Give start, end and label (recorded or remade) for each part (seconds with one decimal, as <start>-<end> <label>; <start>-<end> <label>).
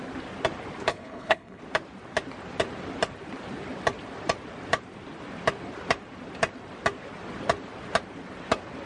0.0-0.9 recorded; 0.9-1.6 remade; 1.6-8.9 recorded